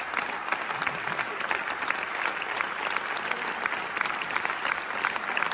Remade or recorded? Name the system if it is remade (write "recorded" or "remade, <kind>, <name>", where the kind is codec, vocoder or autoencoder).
recorded